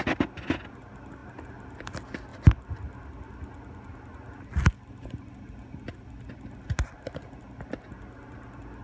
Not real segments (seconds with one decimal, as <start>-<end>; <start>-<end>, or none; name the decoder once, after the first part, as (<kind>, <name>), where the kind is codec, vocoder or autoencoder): none